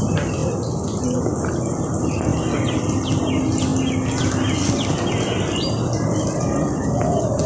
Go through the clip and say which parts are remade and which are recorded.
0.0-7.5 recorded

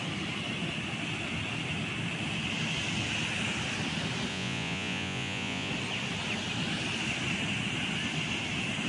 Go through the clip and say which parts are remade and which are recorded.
0.0-4.3 recorded; 4.3-5.7 remade; 5.7-8.9 recorded

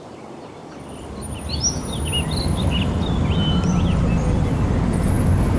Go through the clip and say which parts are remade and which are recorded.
0.0-5.6 recorded